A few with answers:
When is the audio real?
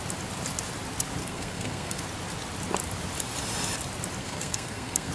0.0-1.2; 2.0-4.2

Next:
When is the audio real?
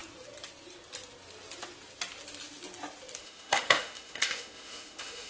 0.0-3.2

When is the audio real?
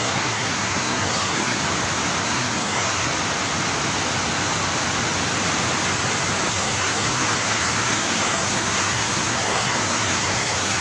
1.6-2.2; 3.1-6.5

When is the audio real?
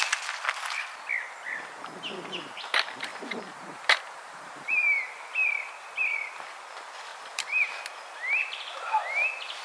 0.0-3.1; 5.0-7.1; 7.7-8.4; 9.0-9.6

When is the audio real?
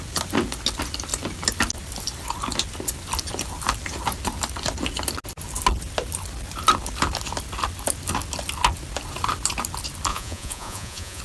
0.0-10.1